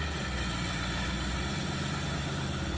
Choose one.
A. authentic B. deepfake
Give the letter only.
A